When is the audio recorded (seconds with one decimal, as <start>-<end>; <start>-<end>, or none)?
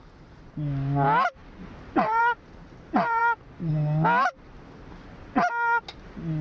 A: 0.0-6.4